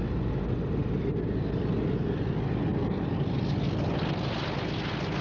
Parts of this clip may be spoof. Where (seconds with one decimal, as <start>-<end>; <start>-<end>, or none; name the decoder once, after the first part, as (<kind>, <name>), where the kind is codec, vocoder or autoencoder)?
none